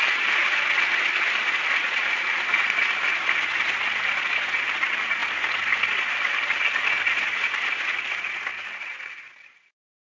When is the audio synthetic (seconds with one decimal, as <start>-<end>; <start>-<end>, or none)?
none